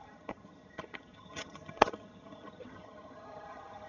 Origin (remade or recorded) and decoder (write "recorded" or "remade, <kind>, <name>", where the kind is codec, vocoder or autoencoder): remade, vocoder, HiFi-GAN